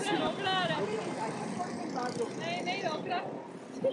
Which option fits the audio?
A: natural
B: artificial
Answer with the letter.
A